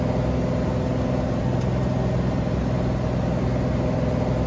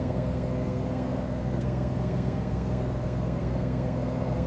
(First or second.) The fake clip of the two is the second